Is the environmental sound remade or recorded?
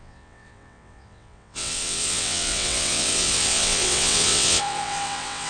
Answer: remade